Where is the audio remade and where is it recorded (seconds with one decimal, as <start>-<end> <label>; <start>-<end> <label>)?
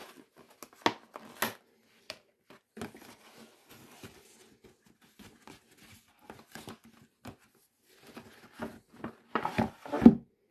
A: 0.0-10.5 recorded